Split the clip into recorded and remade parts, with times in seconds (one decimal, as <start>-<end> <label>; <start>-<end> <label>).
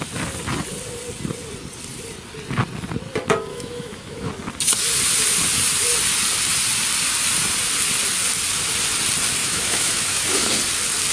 0.0-3.5 recorded; 3.5-4.3 remade; 4.3-9.4 recorded; 9.4-10.5 remade; 10.5-11.1 recorded